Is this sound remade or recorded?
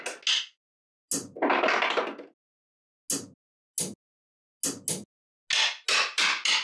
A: recorded